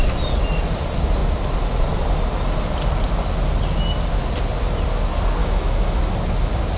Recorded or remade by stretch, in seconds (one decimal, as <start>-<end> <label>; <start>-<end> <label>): 0.0-5.4 recorded; 5.4-6.0 remade; 6.0-6.8 recorded